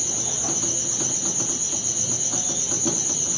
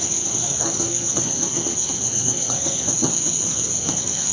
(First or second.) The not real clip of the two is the second